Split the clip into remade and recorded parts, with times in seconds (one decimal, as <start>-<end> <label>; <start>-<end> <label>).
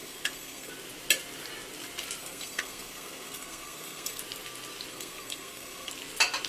0.0-0.7 remade; 0.7-2.2 recorded; 2.2-4.2 remade; 4.2-4.9 recorded; 4.9-5.9 remade; 5.9-6.5 recorded